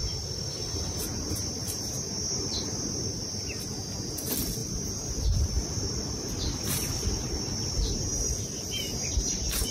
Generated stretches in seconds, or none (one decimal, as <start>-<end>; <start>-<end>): 8.1-8.8